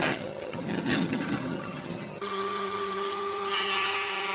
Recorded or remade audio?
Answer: remade